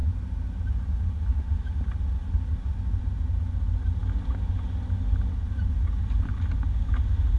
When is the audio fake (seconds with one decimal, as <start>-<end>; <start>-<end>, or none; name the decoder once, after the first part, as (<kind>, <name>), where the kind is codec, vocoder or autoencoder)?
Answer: none